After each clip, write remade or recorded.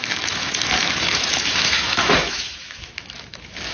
remade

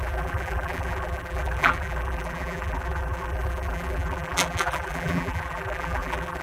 remade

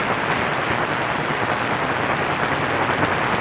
recorded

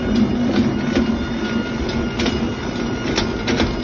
recorded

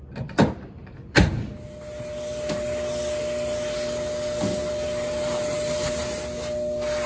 recorded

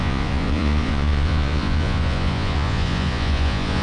remade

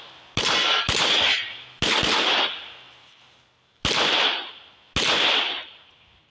recorded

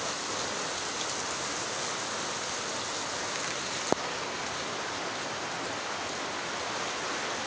recorded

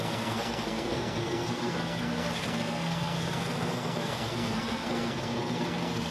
remade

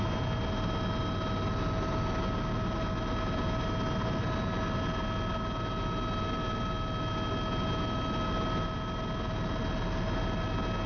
recorded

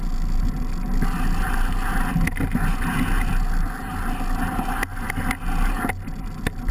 recorded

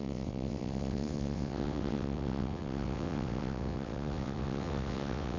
remade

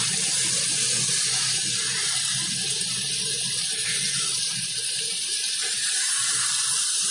remade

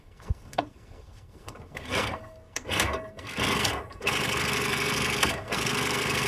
remade